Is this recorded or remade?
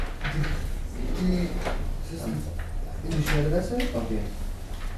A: recorded